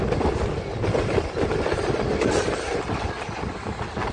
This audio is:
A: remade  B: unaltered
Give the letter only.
B